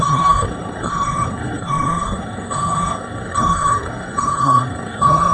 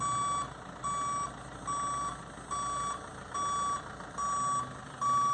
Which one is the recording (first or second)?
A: second